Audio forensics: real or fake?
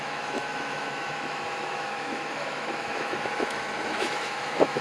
fake